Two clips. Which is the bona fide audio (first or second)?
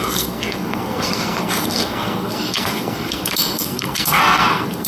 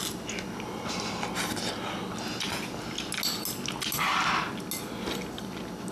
second